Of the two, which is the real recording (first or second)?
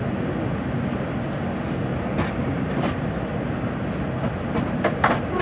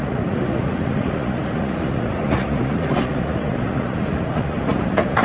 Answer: first